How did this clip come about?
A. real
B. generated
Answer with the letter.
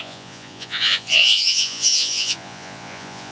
B